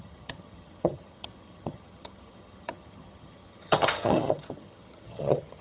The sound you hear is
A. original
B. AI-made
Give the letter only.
B